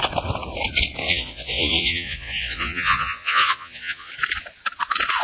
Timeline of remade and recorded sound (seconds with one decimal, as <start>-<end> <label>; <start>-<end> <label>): 0.0-1.0 recorded; 1.0-4.1 remade; 4.1-5.2 recorded